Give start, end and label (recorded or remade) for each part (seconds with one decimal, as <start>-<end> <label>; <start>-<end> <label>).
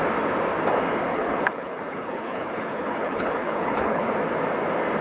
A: 0.0-1.1 recorded; 1.1-4.1 remade; 4.1-5.0 recorded